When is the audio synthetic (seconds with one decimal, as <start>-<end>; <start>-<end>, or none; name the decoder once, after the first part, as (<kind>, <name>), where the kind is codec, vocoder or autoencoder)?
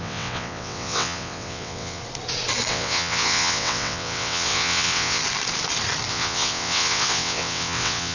0.0-2.0 (vocoder, WaveNeXt); 2.7-5.2; 6.1-8.1